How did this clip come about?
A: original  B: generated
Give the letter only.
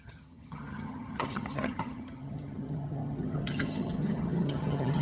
B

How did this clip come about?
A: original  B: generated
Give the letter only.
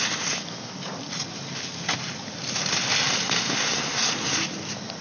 A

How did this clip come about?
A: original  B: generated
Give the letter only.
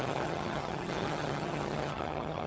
B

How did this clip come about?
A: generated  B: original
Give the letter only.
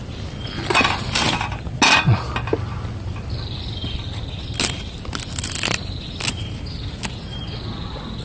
B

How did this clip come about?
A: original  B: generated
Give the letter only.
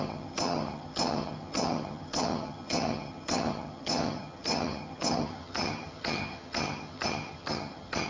B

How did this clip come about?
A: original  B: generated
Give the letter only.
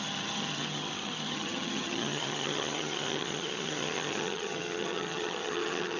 B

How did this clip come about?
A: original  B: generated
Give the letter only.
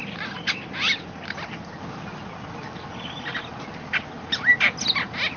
A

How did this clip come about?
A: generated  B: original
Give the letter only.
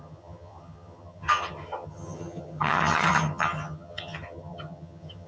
A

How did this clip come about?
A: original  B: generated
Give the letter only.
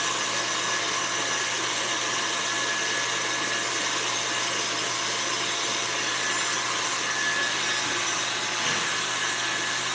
A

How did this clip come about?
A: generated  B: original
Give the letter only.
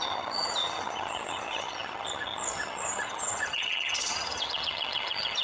A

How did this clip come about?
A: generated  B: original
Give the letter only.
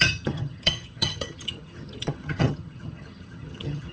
A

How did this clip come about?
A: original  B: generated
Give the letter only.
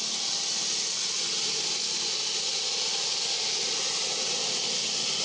A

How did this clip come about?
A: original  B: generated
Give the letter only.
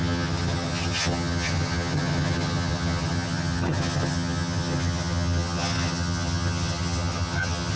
B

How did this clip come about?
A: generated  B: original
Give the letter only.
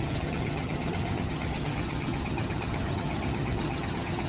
A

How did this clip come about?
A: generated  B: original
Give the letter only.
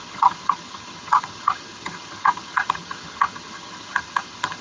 A